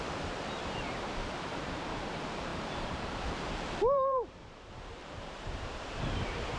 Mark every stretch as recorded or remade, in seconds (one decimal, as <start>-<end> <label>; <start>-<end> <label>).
0.0-6.6 remade

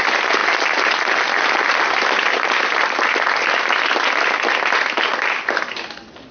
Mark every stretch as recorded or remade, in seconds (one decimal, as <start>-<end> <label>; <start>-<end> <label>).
0.0-6.3 recorded

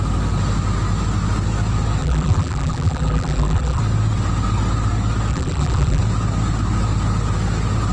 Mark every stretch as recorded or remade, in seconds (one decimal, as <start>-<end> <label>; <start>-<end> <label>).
0.0-2.0 recorded; 2.0-3.8 remade; 3.8-5.3 recorded; 5.3-6.0 remade; 6.0-7.9 recorded

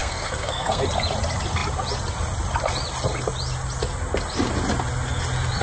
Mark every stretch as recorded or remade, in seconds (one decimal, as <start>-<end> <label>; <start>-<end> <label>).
0.0-0.8 remade; 0.8-5.6 recorded

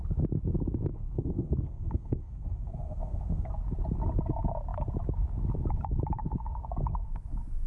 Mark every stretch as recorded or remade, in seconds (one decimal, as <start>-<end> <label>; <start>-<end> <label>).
0.0-0.9 recorded; 0.9-3.5 remade; 3.5-7.7 recorded